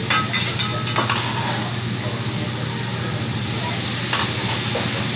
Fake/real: real